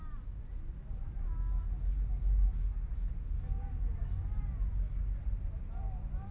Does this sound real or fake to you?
real